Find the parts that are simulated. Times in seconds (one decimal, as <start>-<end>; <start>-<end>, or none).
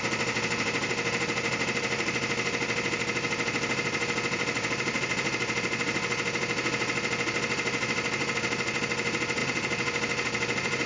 none